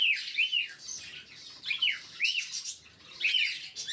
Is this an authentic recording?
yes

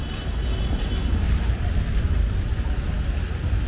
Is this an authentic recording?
yes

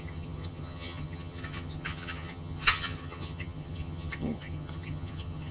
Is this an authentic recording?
no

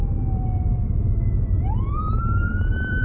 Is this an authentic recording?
no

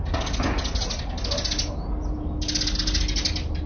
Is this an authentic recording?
yes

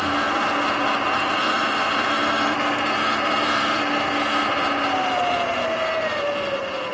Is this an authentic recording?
yes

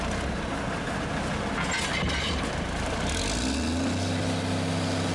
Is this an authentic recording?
yes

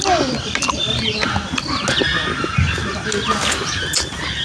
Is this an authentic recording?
yes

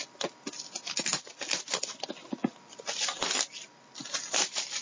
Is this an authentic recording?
yes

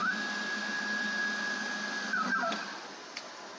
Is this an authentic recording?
yes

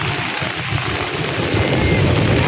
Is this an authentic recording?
yes